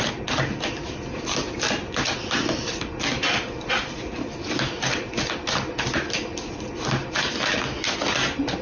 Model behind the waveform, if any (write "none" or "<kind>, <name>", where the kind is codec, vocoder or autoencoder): none